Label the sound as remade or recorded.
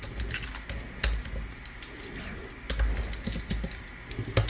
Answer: recorded